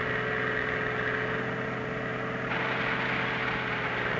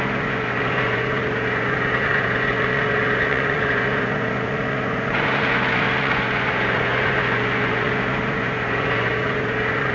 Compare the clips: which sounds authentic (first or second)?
first